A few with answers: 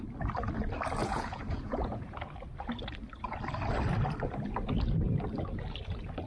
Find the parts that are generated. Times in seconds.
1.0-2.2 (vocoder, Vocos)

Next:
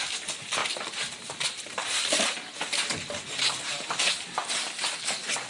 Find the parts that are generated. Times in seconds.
none

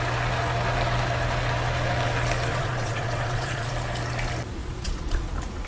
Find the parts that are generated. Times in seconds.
2.5-3.7 (vocoder, Vocos); 4.6-5.3

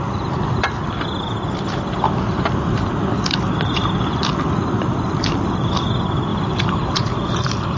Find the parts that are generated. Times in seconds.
6.3-7.8 (vocoder, BigVGAN v2)

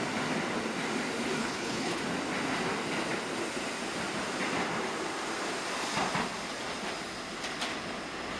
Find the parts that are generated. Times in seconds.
1.4-2.0 (codec, HILCodec)

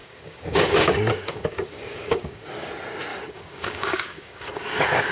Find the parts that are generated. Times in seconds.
0.0-2.7 (codec, DAC); 3.1-5.1